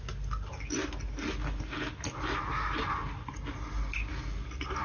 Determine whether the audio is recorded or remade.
recorded